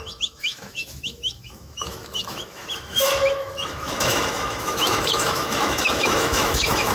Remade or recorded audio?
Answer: remade